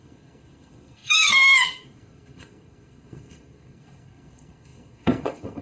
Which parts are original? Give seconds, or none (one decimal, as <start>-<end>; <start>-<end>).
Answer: none